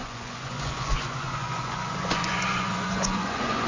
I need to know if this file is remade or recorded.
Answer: remade